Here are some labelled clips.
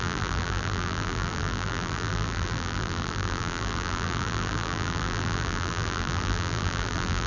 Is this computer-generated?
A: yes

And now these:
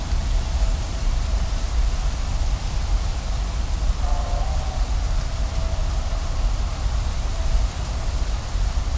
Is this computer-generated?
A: no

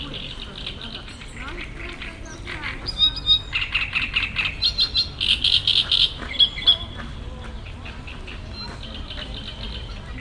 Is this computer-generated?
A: no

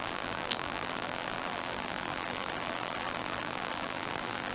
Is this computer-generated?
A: yes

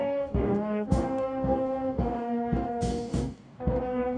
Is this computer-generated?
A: yes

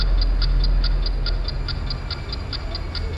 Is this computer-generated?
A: no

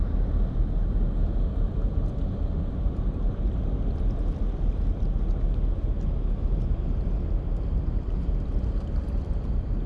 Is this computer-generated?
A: no